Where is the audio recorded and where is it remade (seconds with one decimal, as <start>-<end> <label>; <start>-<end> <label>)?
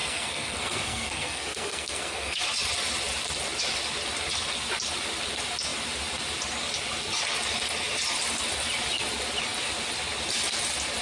0.0-2.4 remade; 2.4-11.0 recorded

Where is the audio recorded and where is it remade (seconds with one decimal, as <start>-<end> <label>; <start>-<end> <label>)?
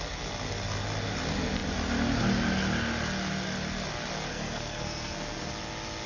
0.0-4.3 recorded; 4.3-5.5 remade; 5.5-6.1 recorded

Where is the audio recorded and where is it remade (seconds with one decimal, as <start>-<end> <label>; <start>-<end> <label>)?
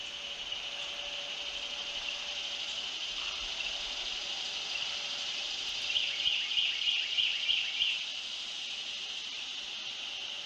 0.0-10.5 recorded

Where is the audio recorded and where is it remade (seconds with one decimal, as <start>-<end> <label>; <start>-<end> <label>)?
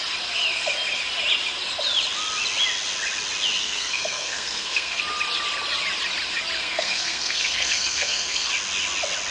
0.0-3.6 recorded; 3.6-5.0 remade; 5.0-6.6 recorded; 6.6-8.5 remade; 8.5-9.3 recorded